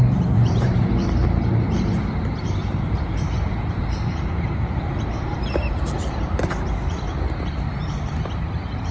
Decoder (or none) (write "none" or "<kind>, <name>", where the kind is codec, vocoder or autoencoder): vocoder, BigVGAN v2